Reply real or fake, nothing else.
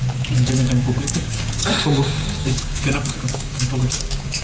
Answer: fake